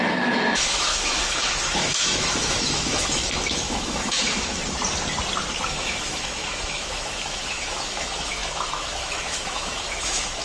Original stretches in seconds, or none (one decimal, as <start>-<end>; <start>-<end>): 4.6-5.7